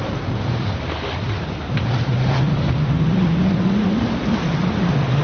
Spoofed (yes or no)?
no